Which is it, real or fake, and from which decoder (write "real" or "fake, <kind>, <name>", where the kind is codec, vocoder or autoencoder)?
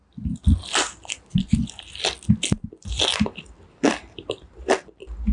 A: real